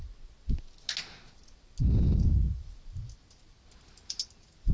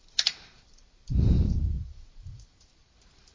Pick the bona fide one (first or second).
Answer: first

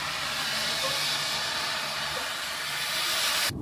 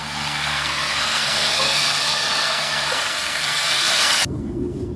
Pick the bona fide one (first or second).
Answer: first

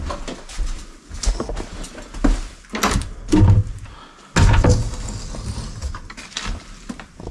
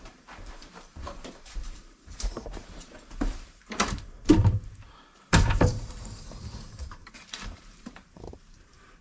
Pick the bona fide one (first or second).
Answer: first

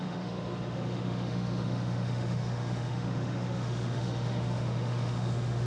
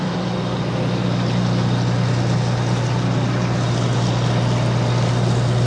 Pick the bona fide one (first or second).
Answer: second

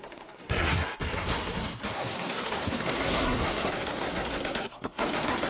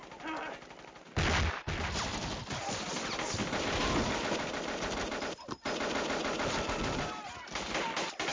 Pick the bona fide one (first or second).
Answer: second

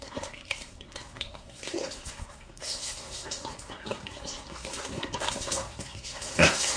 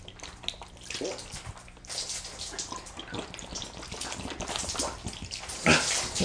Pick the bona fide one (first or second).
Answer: second